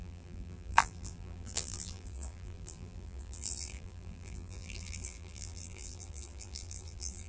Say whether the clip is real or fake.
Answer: fake